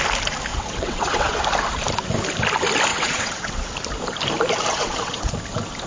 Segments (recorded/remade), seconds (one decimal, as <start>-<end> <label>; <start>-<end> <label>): 0.0-0.5 recorded; 0.5-1.4 remade; 1.4-2.9 recorded; 2.9-3.7 remade; 3.7-4.7 recorded; 4.7-5.3 remade; 5.3-5.9 recorded